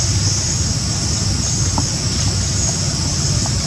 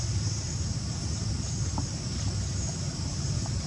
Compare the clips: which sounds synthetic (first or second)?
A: second